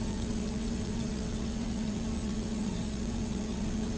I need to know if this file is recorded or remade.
remade